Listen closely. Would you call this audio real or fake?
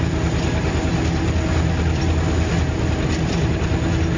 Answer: real